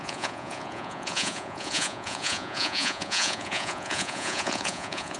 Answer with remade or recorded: remade